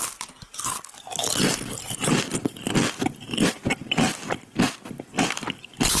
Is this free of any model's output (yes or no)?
yes